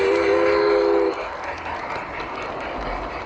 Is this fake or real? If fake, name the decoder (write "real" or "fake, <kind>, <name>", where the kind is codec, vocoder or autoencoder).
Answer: real